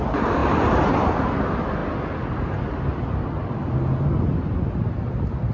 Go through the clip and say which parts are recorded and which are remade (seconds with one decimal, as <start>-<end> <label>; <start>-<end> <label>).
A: 0.0-5.5 recorded